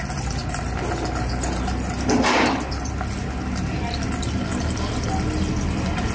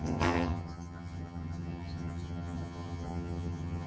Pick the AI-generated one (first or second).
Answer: second